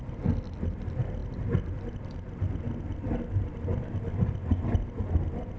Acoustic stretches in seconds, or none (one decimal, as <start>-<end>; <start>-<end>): 0.0-5.6